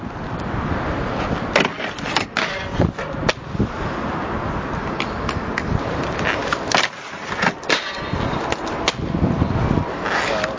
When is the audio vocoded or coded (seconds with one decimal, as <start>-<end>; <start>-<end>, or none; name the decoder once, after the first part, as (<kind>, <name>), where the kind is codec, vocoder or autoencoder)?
none